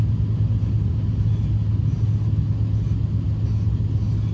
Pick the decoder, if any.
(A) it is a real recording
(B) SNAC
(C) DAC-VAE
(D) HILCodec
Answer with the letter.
A